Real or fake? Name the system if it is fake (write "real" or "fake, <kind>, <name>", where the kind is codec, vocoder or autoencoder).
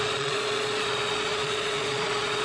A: fake, vocoder, Vocos